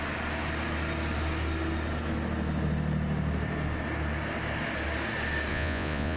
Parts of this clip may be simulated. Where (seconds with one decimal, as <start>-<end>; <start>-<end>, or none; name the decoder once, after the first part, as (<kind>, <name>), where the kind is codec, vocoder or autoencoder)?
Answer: 5.5-6.2 (vocoder, Vocos)